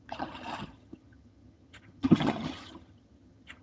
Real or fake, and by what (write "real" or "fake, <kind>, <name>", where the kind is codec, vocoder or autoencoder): fake, vocoder, HiFi-GAN